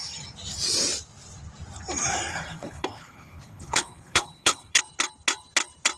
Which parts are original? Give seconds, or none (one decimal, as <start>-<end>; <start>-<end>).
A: 0.0-2.3; 4.8-6.0